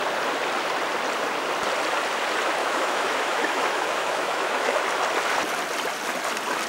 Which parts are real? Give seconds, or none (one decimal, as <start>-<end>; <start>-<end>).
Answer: 0.0-2.6; 4.8-6.7